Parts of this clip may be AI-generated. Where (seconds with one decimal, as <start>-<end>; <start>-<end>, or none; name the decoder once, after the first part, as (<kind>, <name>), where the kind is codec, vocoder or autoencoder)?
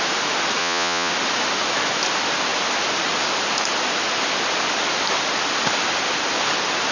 0.6-1.1 (vocoder, Vocos)